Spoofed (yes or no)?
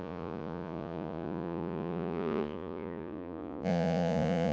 yes